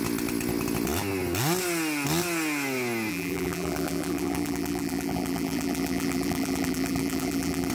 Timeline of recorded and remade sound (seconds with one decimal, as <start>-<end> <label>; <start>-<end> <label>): 0.0-3.1 recorded; 3.1-7.7 remade